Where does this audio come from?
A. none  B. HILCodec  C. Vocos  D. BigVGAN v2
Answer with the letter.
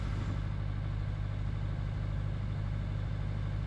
A